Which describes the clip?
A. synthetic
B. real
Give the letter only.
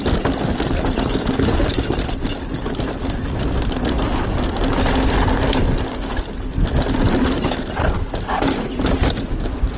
B